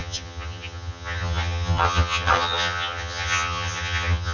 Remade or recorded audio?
remade